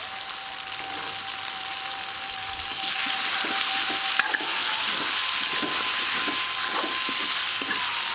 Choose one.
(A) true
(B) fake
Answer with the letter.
A